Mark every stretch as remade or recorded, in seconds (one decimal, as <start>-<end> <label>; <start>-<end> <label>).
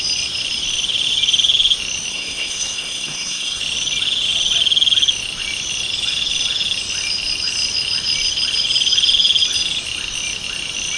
0.0-2.1 recorded; 2.1-3.6 remade; 3.6-11.0 recorded